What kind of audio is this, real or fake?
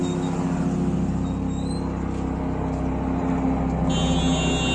real